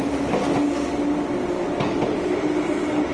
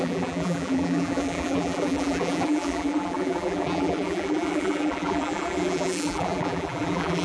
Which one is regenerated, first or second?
second